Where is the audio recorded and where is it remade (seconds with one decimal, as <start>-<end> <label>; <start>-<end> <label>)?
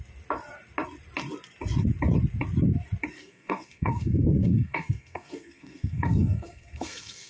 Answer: 0.0-3.2 recorded; 3.2-7.3 remade